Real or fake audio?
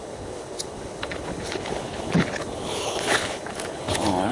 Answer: fake